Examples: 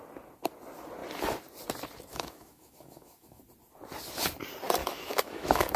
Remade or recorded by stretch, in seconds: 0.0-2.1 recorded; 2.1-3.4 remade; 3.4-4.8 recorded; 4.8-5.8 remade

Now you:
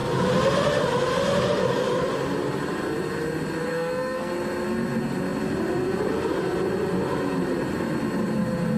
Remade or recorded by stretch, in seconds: 0.0-3.7 recorded; 3.7-4.3 remade; 4.3-8.8 recorded

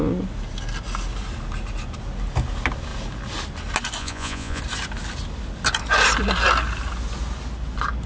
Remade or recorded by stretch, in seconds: 0.0-4.0 recorded; 4.0-4.6 remade; 4.6-8.1 recorded

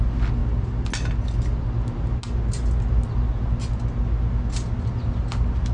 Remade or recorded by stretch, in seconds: 0.0-5.7 recorded

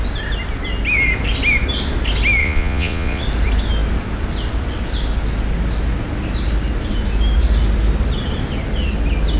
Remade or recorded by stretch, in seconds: 0.0-2.4 recorded; 2.4-3.2 remade; 3.2-9.4 recorded

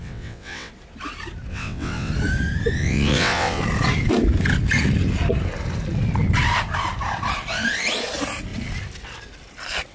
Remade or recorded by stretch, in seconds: 0.0-0.7 remade; 0.7-1.5 recorded; 1.5-2.1 remade; 2.1-2.8 recorded; 2.8-3.6 remade; 3.6-9.9 recorded